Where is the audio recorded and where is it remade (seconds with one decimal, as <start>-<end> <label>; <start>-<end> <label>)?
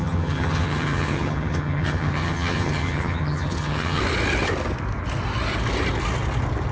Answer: 0.0-4.0 remade; 4.0-6.7 recorded